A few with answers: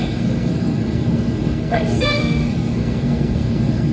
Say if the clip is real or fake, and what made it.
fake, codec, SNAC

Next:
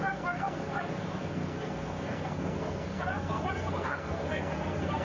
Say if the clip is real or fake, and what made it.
fake, codec, SNAC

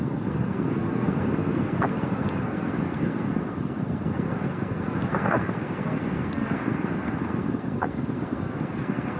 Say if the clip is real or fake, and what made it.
fake, codec, SNAC